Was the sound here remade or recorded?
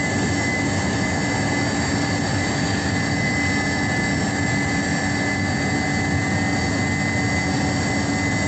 recorded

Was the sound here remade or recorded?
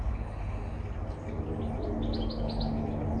recorded